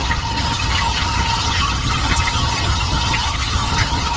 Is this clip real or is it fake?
fake